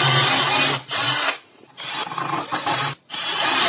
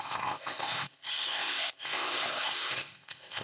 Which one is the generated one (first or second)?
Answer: second